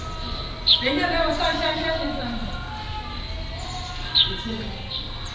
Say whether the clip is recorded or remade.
recorded